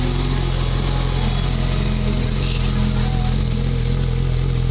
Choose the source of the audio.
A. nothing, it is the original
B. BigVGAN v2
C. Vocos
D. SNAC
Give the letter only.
A